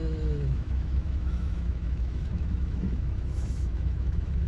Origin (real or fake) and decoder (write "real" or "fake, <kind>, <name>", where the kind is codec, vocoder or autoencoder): fake, autoencoder, DAC-VAE